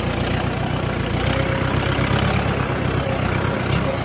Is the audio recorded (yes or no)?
yes